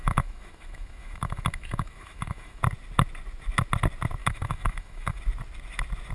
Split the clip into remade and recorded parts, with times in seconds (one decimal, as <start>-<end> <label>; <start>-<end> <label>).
0.0-2.6 remade; 2.6-4.2 recorded; 4.2-5.2 remade; 5.2-6.1 recorded